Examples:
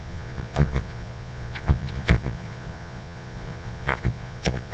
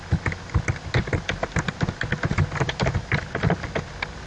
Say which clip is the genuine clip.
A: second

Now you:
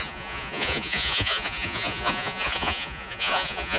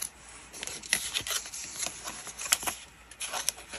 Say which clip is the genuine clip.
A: second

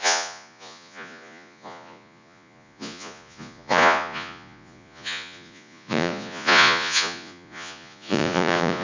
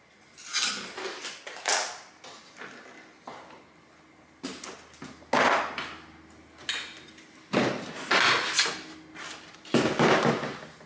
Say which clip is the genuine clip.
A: second